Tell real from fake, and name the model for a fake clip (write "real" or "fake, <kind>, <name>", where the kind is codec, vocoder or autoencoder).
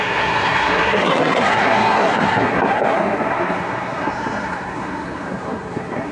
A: fake, codec, SNAC